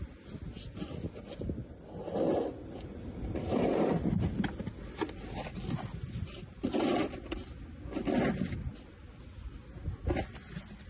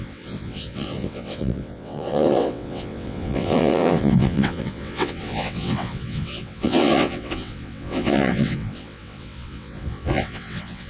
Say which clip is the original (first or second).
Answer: first